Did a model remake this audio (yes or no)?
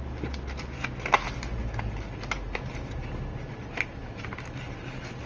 no